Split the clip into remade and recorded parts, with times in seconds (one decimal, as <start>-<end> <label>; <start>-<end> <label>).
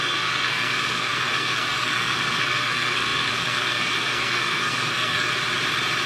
0.0-5.3 remade; 5.3-6.1 recorded